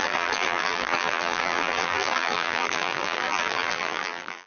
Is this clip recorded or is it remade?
remade